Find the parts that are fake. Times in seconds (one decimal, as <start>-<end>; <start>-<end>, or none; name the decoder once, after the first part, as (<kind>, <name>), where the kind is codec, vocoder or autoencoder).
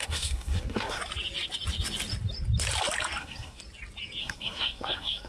0.0-1.0 (codec, SNAC); 3.2-3.6; 4.2-5.3